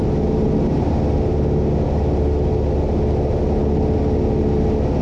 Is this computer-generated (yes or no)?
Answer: no